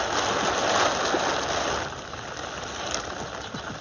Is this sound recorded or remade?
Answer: recorded